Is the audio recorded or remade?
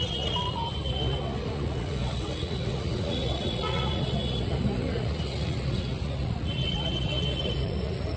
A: remade